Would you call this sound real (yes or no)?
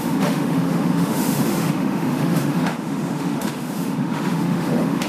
no